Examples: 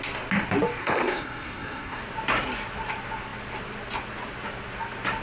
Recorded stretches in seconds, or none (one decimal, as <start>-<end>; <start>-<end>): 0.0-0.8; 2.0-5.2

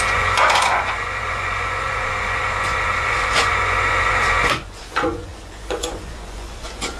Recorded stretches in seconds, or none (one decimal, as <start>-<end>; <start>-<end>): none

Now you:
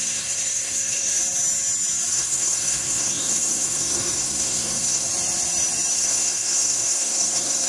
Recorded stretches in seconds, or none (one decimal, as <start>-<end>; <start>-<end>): 1.2-2.1; 5.1-5.9

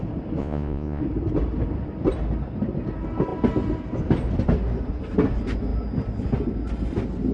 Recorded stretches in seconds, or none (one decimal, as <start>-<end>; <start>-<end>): 0.0-0.4; 1.0-7.3

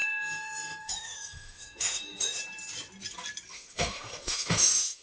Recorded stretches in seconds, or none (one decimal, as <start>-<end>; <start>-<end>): 2.4-3.5